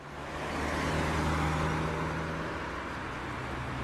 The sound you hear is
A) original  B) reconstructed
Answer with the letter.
A